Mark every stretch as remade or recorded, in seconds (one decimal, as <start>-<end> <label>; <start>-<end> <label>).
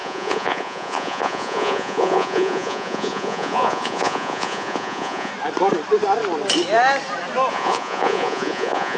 0.0-5.3 remade; 5.3-7.5 recorded; 7.5-9.0 remade